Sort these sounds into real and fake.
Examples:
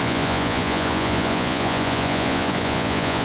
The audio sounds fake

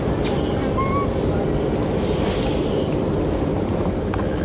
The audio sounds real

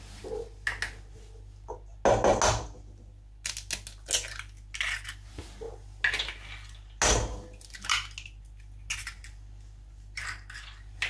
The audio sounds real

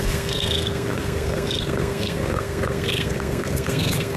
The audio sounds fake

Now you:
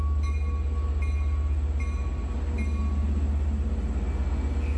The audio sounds real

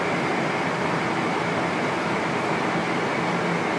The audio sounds real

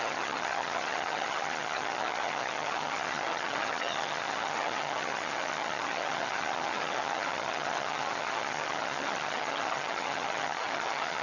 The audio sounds fake